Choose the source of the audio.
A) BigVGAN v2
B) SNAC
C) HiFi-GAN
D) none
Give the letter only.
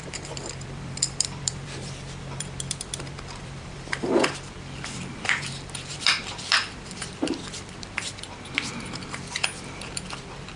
A